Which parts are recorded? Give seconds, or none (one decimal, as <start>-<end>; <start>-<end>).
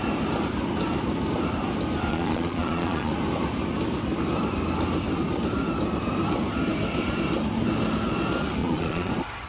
0.0-2.1; 3.1-8.6; 9.1-9.5